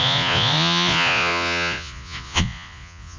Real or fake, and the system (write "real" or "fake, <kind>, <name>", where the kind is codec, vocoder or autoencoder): fake, vocoder, Vocos